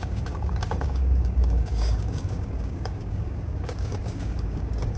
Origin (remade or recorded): remade